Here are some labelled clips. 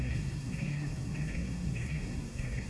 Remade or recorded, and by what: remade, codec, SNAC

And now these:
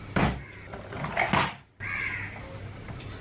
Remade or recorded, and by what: recorded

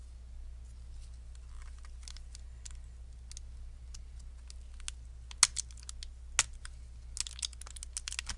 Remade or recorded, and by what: recorded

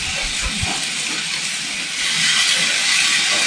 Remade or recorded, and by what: recorded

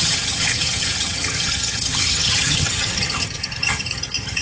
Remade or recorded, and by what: remade, vocoder, HiFi-GAN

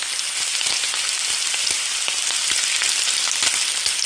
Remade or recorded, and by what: recorded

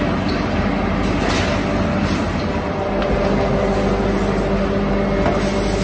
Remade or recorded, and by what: recorded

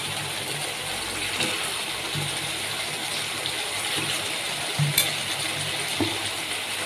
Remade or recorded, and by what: remade, vocoder, BigVGAN v2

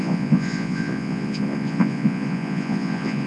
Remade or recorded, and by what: remade, vocoder, Vocos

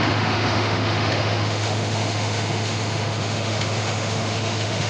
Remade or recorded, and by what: remade, autoencoder, DAC-VAE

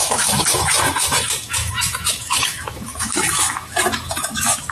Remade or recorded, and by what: remade, autoencoder, DAC-VAE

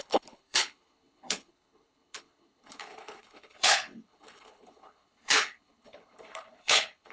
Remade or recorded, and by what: remade, codec, HILCodec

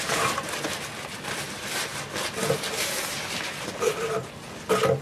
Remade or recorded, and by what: recorded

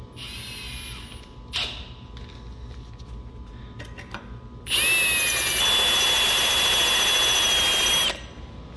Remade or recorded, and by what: recorded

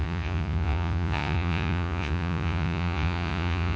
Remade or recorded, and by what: remade, vocoder, Vocos